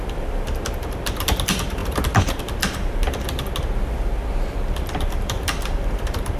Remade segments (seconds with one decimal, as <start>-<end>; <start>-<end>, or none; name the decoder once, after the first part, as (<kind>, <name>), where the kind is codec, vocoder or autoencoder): 0.0-6.4 (vocoder, BigVGAN v2)